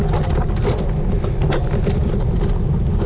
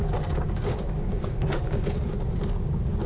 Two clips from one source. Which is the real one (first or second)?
first